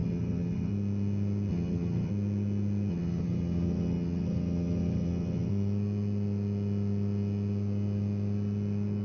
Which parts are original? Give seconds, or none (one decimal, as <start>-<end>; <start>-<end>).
0.7-1.5; 2.1-2.9; 5.5-9.0